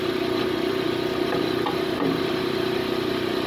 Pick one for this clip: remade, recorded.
remade